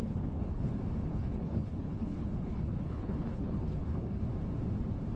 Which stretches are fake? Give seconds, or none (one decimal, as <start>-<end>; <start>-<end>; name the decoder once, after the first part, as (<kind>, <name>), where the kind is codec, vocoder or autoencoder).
0.0-0.7 (codec, HILCodec); 1.1-4.2